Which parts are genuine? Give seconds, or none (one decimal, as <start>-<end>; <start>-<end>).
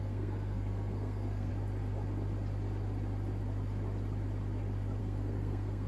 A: 1.5-5.0